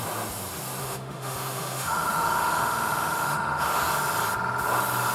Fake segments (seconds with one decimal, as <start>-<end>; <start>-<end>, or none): 0.8-3.9

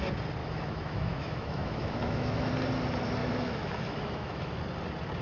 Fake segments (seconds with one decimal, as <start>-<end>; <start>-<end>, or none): 0.4-2.5; 3.2-4.6